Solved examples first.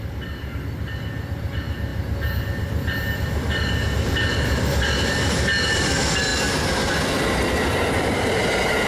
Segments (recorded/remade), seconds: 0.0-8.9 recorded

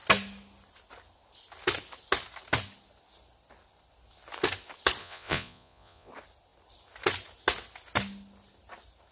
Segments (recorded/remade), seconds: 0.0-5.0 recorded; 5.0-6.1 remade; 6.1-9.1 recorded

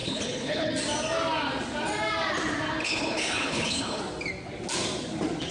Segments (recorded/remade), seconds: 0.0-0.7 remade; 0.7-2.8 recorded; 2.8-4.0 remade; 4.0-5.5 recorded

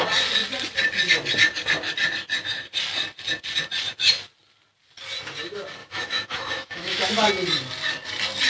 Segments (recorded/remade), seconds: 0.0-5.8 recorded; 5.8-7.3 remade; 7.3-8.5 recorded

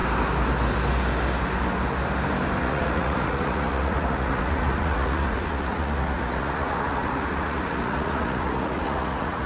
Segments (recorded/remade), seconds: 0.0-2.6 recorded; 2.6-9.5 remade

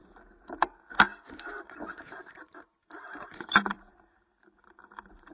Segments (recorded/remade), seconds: 0.0-1.9 recorded; 1.9-5.3 remade

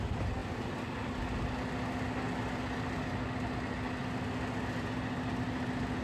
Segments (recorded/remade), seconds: 0.0-6.0 recorded